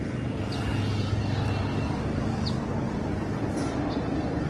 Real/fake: real